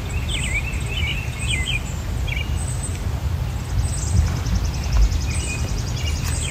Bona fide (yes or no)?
yes